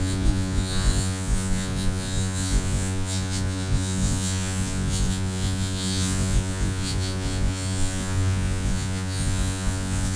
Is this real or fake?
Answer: fake